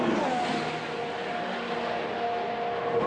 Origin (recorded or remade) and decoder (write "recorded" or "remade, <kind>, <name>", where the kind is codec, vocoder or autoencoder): recorded